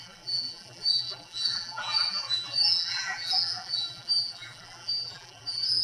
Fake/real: fake